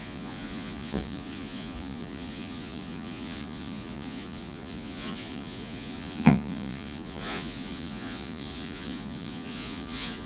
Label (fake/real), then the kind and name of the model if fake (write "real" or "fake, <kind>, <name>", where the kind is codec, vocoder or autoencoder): fake, vocoder, Vocos